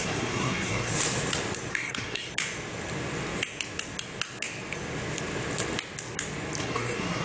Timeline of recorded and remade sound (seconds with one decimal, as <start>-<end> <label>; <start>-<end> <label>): 0.0-0.9 remade; 0.9-1.7 recorded; 1.7-2.3 remade; 2.3-6.6 recorded; 6.6-7.2 remade